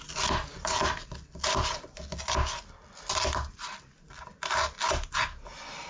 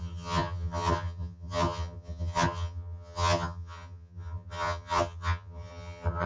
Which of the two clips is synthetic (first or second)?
second